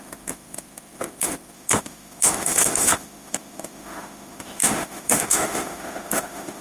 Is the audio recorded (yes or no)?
no